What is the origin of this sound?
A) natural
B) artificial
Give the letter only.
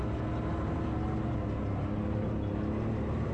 A